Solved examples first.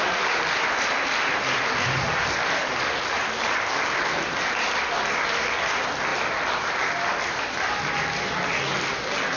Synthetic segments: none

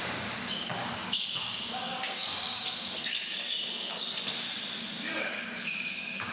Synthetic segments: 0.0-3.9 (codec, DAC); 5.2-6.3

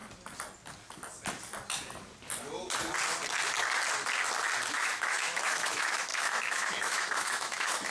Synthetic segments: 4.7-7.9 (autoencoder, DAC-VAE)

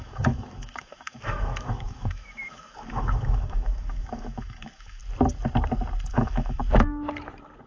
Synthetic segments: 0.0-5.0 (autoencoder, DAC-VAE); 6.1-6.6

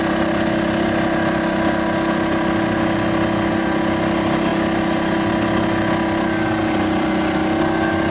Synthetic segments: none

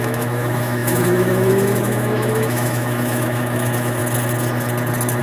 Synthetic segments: 0.0-4.0 (autoencoder, DAC-VAE)

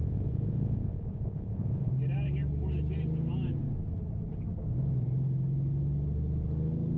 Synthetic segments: 0.0-1.9 (vocoder, Vocos)